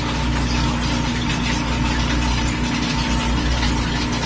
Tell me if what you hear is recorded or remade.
recorded